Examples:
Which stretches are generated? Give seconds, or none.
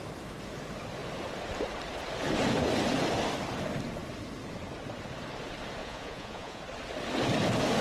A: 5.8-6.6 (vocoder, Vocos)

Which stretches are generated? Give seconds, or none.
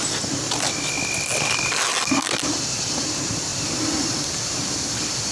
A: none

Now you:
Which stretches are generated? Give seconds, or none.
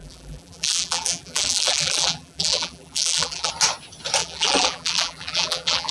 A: 0.0-3.5 (vocoder, BigVGAN v2); 4.2-5.9